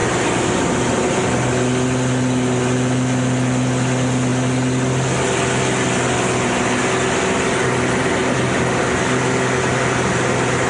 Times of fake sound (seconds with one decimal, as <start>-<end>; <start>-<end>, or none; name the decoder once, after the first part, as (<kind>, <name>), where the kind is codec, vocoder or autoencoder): none